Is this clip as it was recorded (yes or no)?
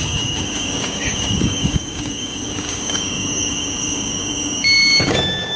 no